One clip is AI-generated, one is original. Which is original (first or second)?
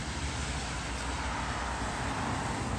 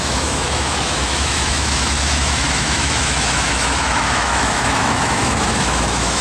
first